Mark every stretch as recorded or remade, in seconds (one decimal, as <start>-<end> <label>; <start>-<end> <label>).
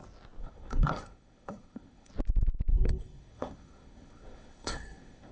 0.0-0.4 recorded; 0.4-2.1 remade; 2.1-2.7 recorded; 2.7-5.3 remade